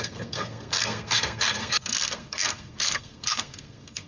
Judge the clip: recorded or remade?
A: remade